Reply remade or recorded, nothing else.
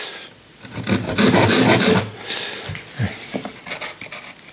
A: recorded